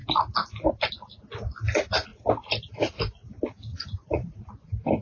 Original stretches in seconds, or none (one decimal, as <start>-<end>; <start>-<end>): 0.0-3.7; 4.5-5.0

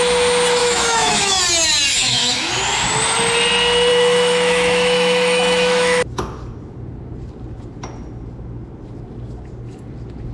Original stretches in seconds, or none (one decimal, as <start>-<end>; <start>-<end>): 0.0-0.6; 1.4-1.9; 2.5-3.9; 6.0-10.3

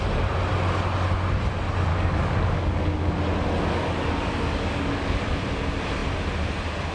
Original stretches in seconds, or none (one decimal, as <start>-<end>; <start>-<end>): 0.0-1.9; 3.2-3.8; 5.2-6.9

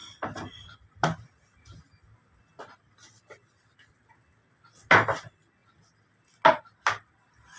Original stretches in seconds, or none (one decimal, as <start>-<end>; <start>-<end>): 0.0-7.6

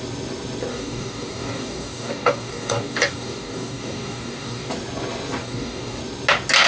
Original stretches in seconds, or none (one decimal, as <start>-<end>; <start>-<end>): 0.0-0.7; 4.7-5.4; 6.0-6.7

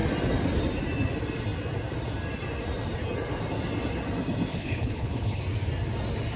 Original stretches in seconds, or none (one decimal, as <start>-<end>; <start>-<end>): 0.0-4.5; 5.4-6.4